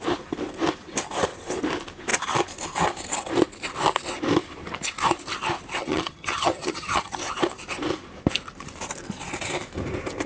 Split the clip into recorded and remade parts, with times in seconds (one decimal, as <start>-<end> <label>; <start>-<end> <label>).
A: 0.0-5.8 recorded; 5.8-7.2 remade; 7.2-10.3 recorded